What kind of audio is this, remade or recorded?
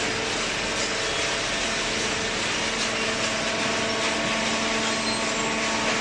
recorded